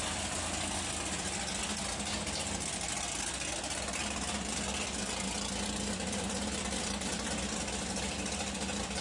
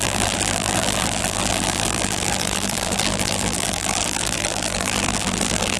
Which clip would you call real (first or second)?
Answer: first